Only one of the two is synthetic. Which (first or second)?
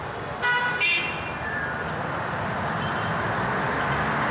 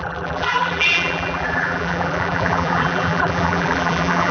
second